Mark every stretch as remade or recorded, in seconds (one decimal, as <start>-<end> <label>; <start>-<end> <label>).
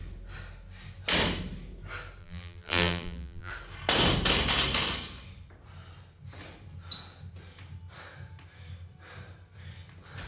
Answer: 0.0-2.2 recorded; 2.2-3.5 remade; 3.5-10.3 recorded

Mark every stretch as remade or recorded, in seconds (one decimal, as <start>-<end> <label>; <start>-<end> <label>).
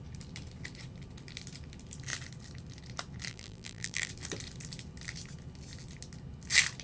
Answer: 0.0-3.3 recorded; 3.3-4.1 remade; 4.1-6.8 recorded